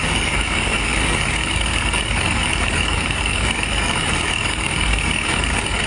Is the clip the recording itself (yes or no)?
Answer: no